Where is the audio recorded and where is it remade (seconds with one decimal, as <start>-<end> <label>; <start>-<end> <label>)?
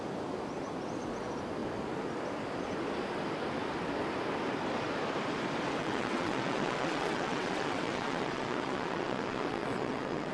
0.0-5.8 recorded; 5.8-10.3 remade